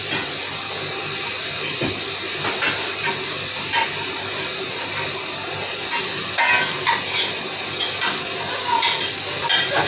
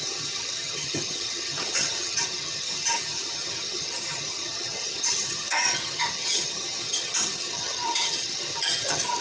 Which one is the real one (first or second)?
first